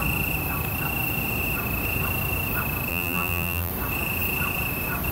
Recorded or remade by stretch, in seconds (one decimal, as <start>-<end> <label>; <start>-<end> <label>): 0.0-2.9 recorded; 2.9-3.7 remade; 3.7-5.1 recorded